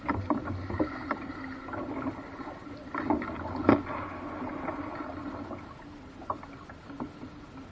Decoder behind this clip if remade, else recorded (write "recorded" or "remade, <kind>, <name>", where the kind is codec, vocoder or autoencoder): recorded